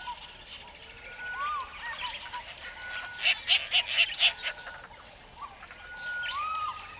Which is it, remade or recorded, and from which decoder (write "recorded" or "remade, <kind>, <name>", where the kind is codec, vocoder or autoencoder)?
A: recorded